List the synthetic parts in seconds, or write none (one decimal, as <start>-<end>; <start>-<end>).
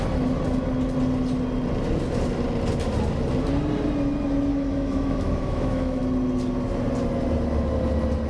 4.5-6.0